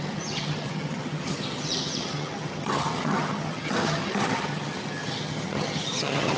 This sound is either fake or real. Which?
fake